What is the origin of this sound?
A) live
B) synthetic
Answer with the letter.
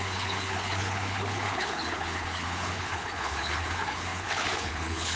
B